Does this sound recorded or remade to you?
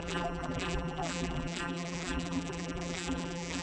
remade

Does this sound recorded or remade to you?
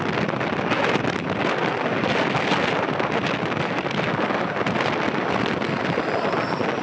recorded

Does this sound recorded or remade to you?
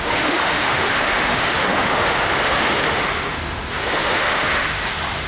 remade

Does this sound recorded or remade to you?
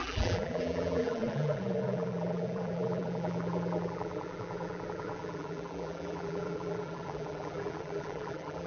remade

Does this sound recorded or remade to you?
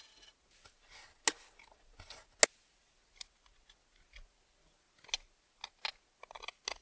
recorded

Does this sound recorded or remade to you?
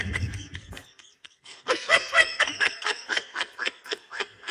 remade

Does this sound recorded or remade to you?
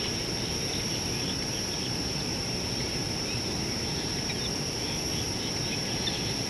recorded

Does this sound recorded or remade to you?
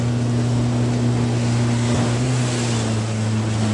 recorded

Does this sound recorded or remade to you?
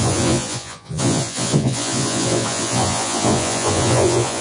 remade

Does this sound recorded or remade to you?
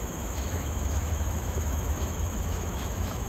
remade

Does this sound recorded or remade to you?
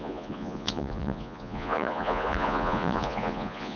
remade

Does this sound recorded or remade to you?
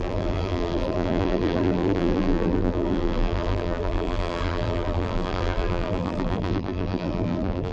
remade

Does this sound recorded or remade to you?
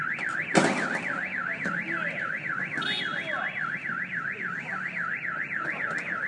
recorded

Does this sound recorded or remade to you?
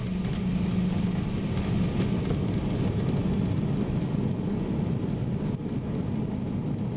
recorded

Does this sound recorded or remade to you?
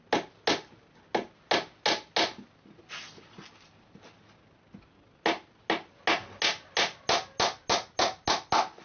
recorded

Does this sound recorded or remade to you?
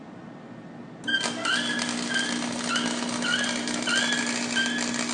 recorded